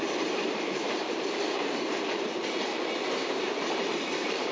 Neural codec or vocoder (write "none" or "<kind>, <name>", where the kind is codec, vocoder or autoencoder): vocoder, BigVGAN v2